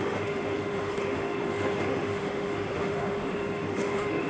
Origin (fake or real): fake